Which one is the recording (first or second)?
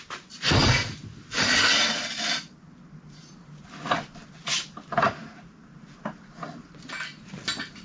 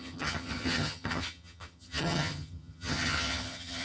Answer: first